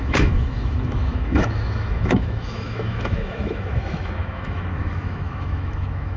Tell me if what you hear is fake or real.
fake